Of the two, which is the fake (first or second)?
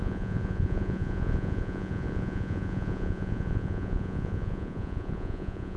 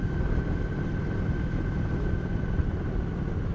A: first